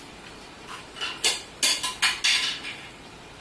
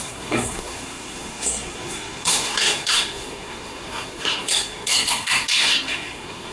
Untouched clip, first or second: first